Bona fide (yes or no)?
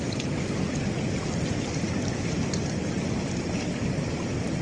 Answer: yes